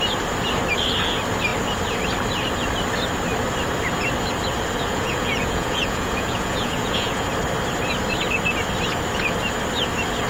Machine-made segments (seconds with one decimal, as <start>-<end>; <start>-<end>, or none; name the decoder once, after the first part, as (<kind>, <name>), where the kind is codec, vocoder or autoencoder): 4.9-7.3 (vocoder, Vocos)